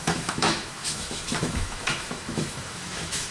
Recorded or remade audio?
remade